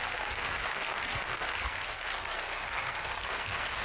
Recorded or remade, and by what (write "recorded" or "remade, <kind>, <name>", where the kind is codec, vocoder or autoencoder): remade, codec, SNAC